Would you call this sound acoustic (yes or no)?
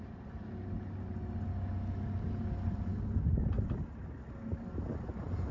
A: yes